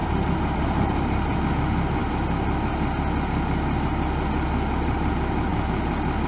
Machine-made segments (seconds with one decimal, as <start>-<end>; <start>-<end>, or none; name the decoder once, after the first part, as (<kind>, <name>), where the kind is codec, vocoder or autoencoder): 0.0-1.4 (vocoder, BigVGAN v2)